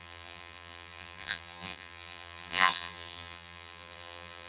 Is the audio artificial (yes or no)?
yes